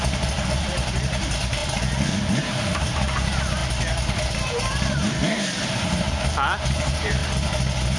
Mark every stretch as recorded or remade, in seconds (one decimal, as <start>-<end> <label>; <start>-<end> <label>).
0.0-1.6 remade; 1.6-2.4 recorded; 2.4-3.6 remade; 3.6-4.2 recorded; 4.2-5.2 remade; 5.2-5.8 recorded; 5.8-7.2 remade; 7.2-8.0 recorded